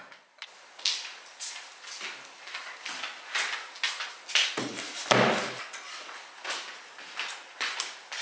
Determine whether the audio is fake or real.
real